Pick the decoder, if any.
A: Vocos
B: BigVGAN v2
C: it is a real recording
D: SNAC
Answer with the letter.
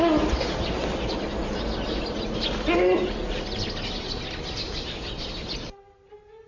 C